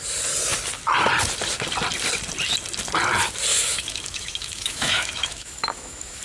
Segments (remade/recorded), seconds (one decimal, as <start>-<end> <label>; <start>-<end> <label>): 0.0-3.5 recorded; 3.5-6.2 remade